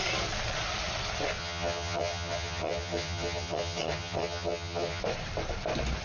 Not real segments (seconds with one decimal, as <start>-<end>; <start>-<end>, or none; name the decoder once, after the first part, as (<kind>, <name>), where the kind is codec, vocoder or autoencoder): 1.4-5.0 (vocoder, HiFi-GAN)